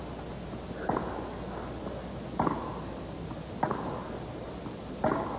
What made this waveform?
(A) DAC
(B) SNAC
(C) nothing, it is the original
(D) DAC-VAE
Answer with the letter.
C